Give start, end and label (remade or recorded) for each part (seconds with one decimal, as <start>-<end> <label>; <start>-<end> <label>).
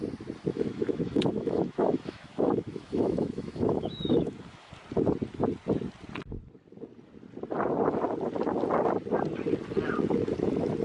0.0-0.5 recorded; 0.5-4.7 remade; 4.7-10.8 recorded